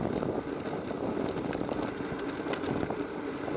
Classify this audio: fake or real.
real